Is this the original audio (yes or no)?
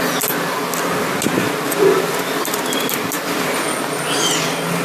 yes